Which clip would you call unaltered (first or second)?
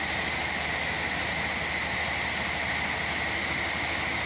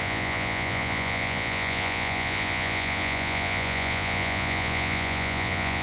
first